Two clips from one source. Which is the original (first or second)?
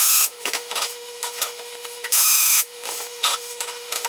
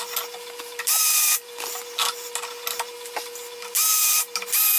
second